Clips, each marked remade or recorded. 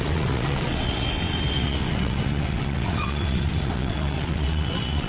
remade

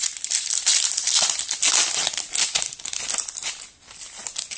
recorded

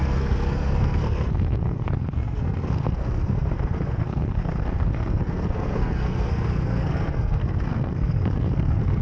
remade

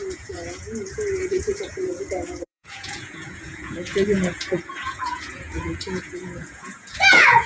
remade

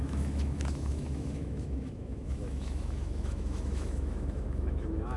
remade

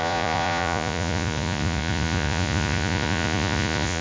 remade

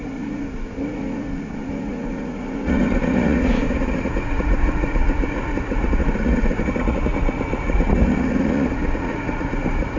remade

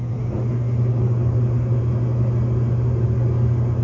recorded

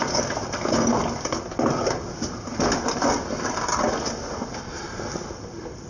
recorded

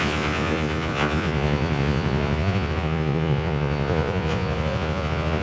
remade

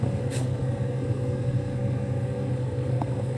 remade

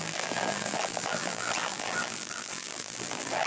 remade